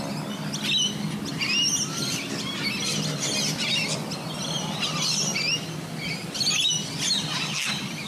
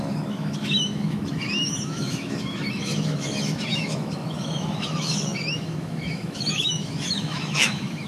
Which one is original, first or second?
first